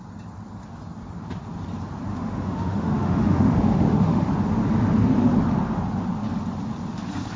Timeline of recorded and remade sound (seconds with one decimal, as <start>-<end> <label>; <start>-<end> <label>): 0.0-2.1 recorded; 2.1-4.3 remade; 4.3-7.4 recorded